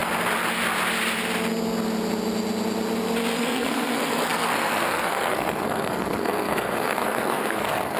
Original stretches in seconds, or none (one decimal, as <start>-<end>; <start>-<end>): 0.0-3.4